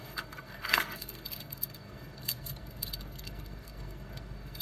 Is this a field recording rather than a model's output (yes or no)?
no